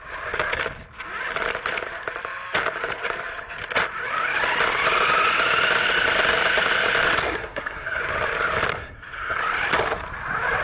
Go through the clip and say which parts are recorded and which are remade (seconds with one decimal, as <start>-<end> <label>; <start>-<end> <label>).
0.0-7.2 recorded; 7.2-8.0 remade; 8.0-8.7 recorded; 8.7-9.4 remade; 9.4-10.6 recorded